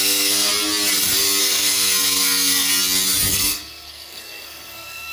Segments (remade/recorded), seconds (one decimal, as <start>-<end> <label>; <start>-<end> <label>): 0.0-0.5 remade; 0.5-1.4 recorded; 1.4-2.7 remade; 2.7-3.3 recorded; 3.3-5.1 remade